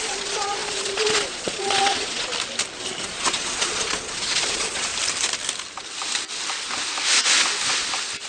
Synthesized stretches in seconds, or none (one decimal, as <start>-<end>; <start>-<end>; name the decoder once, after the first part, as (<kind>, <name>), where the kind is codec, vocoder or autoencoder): 0.0-2.3 (vocoder, Vocos); 3.0-4.9